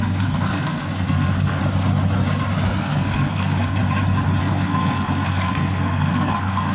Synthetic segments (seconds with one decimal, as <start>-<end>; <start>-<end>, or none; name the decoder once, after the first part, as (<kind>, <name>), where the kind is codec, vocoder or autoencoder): 0.0-1.6 (codec, SNAC); 2.8-3.8; 4.4-6.7